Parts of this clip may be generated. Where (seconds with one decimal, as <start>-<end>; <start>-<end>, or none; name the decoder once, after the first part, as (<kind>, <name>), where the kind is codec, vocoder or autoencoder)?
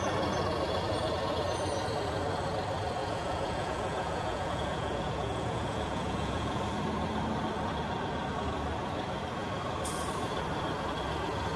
3.0-6.6 (vocoder, Vocos)